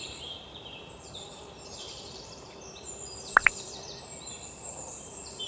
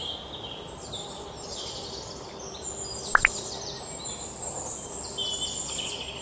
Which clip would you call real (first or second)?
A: second